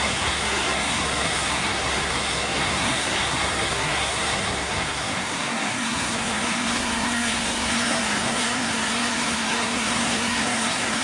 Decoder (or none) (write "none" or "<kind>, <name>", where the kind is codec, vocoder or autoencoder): codec, SNAC